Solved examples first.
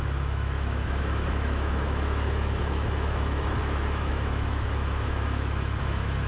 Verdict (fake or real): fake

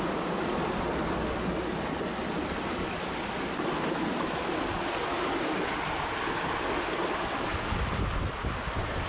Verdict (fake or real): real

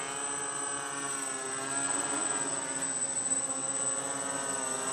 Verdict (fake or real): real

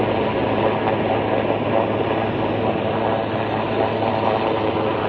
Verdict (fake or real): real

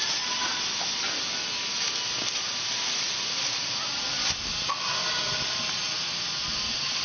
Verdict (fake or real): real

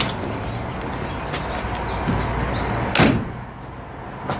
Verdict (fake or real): real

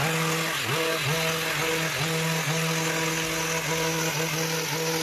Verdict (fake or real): real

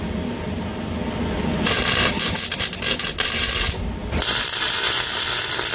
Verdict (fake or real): real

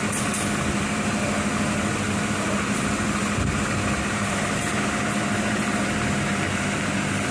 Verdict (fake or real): real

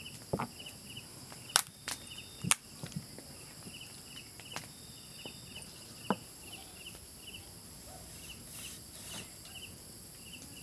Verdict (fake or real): real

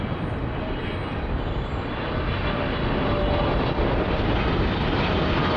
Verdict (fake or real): real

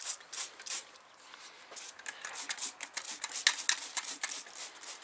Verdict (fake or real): real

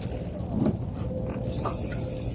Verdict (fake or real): real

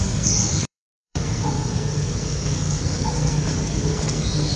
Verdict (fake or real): fake